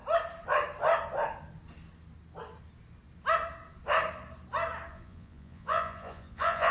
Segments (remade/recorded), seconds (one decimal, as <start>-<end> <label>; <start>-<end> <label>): 0.0-4.9 recorded; 4.9-6.7 remade